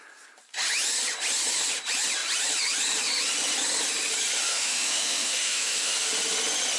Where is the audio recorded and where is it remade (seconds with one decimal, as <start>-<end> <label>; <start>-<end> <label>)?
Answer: 0.0-4.5 recorded; 4.5-6.1 remade; 6.1-6.8 recorded